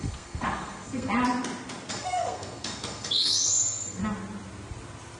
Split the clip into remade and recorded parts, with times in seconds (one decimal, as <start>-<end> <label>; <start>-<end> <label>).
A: 0.0-1.1 remade; 1.1-1.9 recorded; 1.9-4.0 remade; 4.0-5.2 recorded